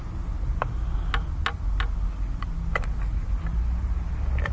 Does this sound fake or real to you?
real